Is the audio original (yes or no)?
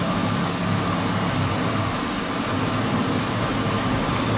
yes